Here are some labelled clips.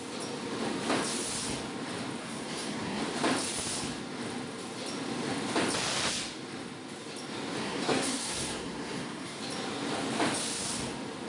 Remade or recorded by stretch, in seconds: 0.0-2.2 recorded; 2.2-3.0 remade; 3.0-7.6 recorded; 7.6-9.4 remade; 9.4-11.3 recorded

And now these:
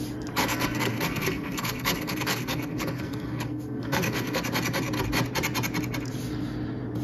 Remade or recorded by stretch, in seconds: 0.0-0.4 recorded; 0.4-4.4 remade; 4.4-7.0 recorded

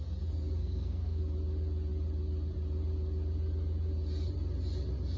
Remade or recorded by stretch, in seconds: 0.0-0.6 recorded; 0.6-1.2 remade; 1.2-5.2 recorded